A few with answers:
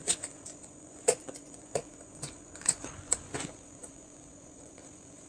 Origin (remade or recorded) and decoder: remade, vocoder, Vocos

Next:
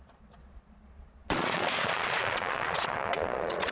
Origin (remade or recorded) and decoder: remade, vocoder, Vocos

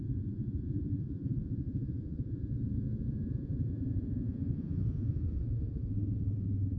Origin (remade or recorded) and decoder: remade, vocoder, Vocos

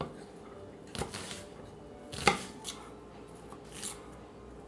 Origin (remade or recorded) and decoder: recorded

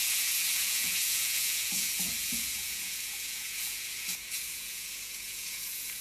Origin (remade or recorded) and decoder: remade, vocoder, Vocos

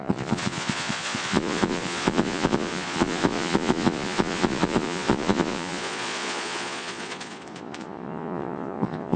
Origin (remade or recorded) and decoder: remade, vocoder, Vocos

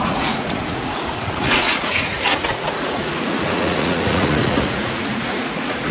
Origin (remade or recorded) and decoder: remade, vocoder, Vocos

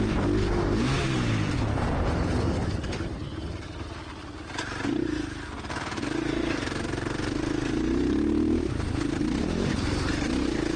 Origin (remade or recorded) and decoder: recorded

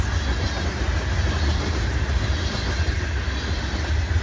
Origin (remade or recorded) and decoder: recorded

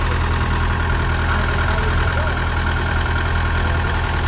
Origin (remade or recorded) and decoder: recorded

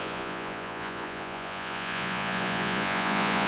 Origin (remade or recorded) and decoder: remade, vocoder, Vocos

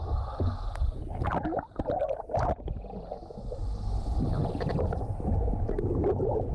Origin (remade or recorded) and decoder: recorded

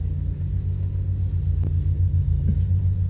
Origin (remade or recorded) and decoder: recorded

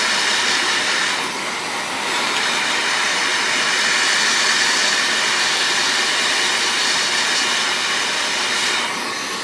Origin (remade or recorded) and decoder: recorded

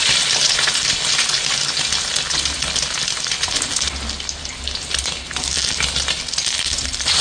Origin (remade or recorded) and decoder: recorded